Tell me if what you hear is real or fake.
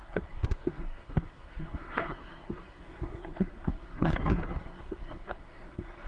fake